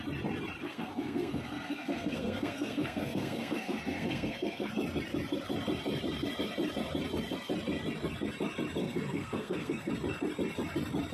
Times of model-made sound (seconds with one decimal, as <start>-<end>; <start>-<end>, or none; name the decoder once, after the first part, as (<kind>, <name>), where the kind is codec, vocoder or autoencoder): 0.6-4.7 (codec, SNAC); 8.8-9.9

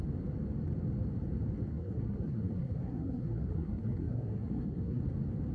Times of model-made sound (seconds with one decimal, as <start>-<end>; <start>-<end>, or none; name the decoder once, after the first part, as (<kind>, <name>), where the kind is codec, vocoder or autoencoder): 1.7-5.0 (codec, SNAC)

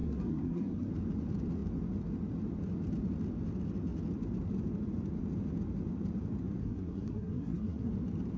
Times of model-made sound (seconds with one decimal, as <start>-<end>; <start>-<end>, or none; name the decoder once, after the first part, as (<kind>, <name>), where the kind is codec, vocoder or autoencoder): 0.0-0.9 (codec, SNAC); 6.6-7.9

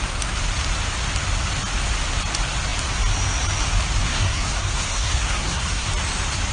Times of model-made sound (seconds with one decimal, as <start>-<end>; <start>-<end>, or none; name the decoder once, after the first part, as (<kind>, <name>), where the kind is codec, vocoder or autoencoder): 4.0-5.9 (codec, SNAC)